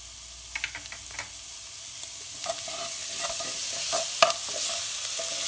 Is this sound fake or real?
real